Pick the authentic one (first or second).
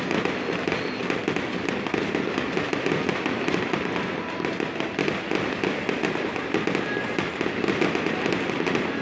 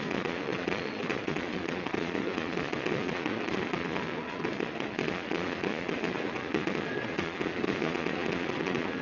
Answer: first